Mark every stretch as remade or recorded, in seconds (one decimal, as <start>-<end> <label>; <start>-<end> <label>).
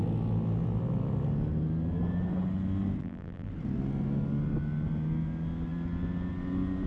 0.0-3.0 recorded; 3.0-3.5 remade; 3.5-6.9 recorded